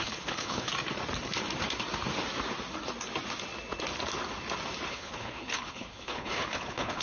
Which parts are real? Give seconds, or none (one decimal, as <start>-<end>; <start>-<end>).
0.7-4.9